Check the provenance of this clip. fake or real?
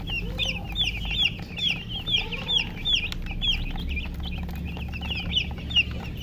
real